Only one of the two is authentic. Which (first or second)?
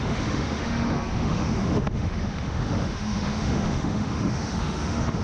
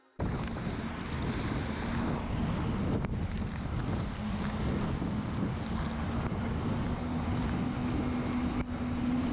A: second